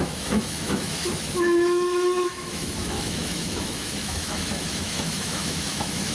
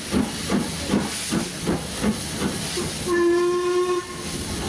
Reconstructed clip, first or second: first